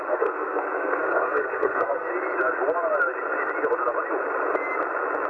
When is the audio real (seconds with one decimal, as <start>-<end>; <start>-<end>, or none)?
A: 2.1-5.3